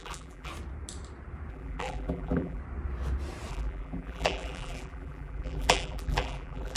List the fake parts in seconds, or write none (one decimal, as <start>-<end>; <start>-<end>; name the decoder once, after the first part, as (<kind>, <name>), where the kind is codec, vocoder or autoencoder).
0.0-0.5 (vocoder, BigVGAN v2); 1.5-2.6; 3.5-6.8